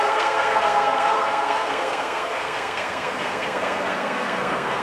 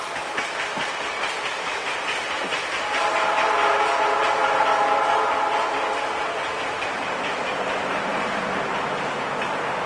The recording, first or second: second